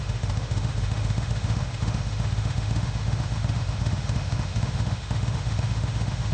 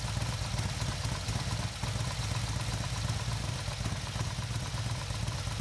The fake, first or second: first